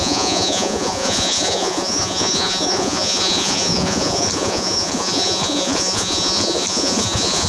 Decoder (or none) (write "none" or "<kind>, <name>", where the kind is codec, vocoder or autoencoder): vocoder, Vocos